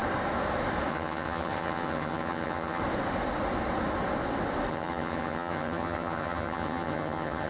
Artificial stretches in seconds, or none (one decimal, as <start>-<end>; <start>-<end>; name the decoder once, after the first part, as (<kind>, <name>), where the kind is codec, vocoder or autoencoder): 0.9-2.8 (vocoder, HiFi-GAN); 4.7-7.5